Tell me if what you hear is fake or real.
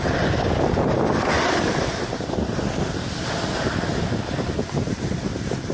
fake